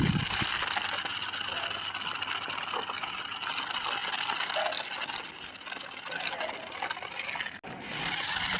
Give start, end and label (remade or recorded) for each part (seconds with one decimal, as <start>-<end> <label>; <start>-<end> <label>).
0.0-8.6 recorded